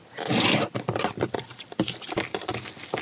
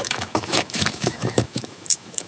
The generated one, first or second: second